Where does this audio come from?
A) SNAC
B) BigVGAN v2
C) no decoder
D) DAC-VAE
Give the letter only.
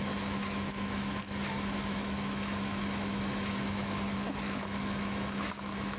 D